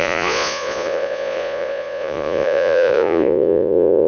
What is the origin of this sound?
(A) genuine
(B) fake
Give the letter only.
B